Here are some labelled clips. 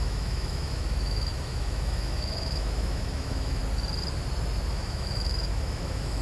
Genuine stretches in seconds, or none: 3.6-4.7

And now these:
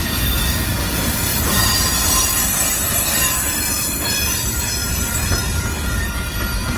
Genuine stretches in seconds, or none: 0.0-1.3; 5.4-6.8

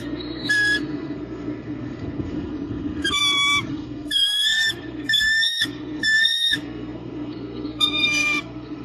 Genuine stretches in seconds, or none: 3.2-3.7

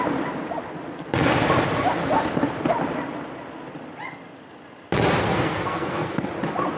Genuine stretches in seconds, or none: 0.0-5.2; 6.3-6.8